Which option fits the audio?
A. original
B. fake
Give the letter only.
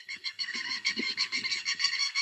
B